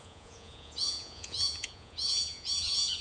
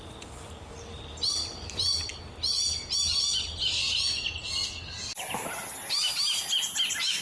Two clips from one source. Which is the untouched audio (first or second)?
second